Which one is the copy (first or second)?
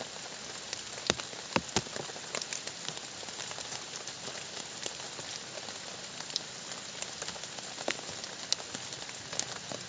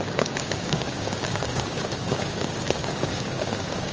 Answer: second